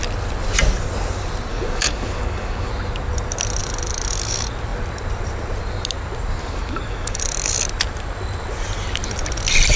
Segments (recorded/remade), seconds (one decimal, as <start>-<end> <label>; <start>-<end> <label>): 0.0-1.5 recorded; 1.5-2.7 remade; 2.7-6.4 recorded; 6.4-7.2 remade; 7.2-9.8 recorded